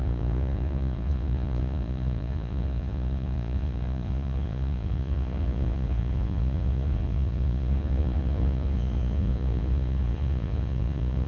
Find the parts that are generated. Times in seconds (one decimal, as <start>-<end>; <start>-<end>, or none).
0.0-11.3